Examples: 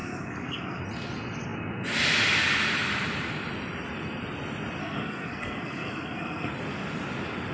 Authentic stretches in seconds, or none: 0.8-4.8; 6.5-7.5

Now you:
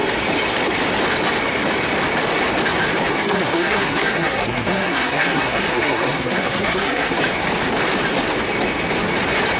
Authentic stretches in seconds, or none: 0.0-3.1; 7.2-9.6